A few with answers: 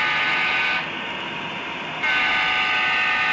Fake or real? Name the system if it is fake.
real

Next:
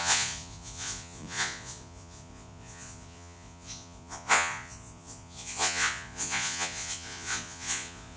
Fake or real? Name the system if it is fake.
fake, vocoder, Vocos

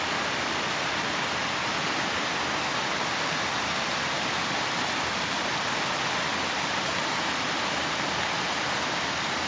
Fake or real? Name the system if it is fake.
real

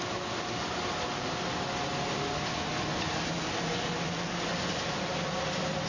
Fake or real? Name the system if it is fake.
real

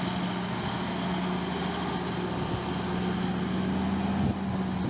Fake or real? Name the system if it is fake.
real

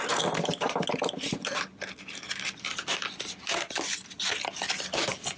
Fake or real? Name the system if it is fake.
real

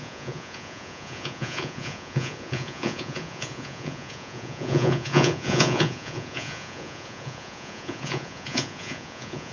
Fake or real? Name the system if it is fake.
fake, vocoder, Vocos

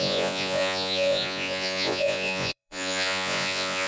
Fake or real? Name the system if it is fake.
fake, vocoder, Vocos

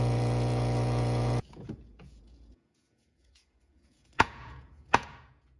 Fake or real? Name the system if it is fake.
fake, vocoder, Vocos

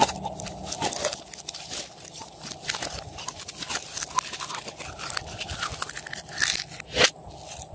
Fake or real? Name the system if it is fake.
real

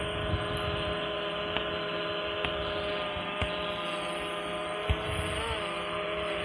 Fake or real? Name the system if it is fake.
real